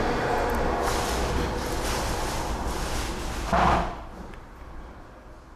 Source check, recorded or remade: recorded